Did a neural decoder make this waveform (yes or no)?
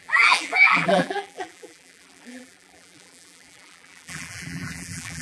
yes